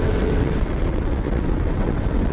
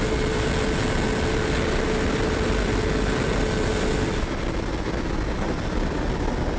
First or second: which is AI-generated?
first